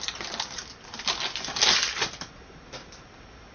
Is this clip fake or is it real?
real